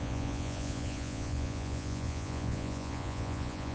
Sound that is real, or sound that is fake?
fake